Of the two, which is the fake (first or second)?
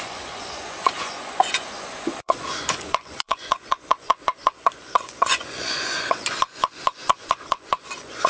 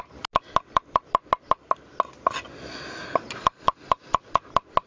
first